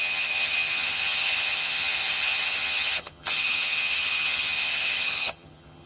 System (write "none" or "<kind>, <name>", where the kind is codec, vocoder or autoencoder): vocoder, HiFi-GAN